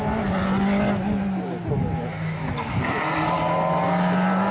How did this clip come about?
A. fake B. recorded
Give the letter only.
B